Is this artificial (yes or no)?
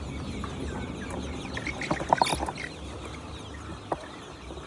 no